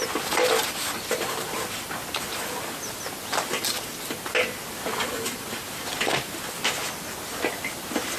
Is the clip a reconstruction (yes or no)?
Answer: no